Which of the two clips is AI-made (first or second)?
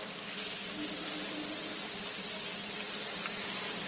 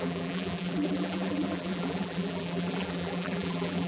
second